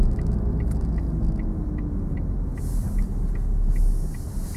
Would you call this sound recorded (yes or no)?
yes